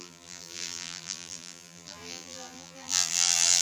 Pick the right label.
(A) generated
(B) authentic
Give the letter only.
A